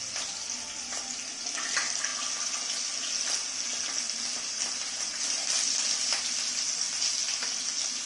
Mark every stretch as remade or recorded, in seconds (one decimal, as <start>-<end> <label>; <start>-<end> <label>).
0.0-8.1 recorded